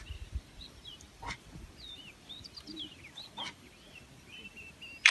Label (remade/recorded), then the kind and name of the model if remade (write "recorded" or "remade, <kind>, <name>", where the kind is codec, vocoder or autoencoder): remade, vocoder, BigVGAN v2